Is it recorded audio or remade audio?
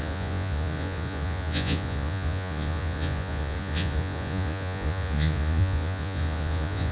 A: remade